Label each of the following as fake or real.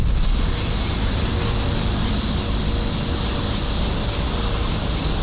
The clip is real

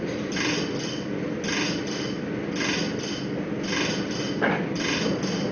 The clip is real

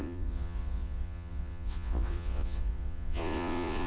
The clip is fake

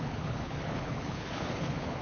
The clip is fake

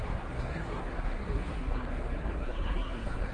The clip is fake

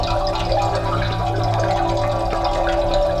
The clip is real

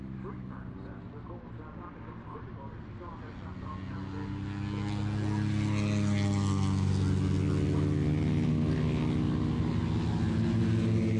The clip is real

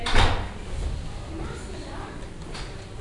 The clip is real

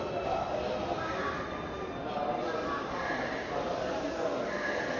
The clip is real